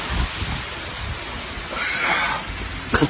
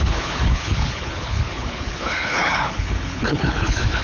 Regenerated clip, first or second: second